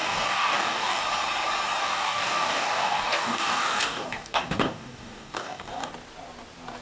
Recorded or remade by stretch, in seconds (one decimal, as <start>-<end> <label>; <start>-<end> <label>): 0.0-1.0 remade; 1.0-1.8 recorded; 1.8-5.9 remade; 5.9-6.8 recorded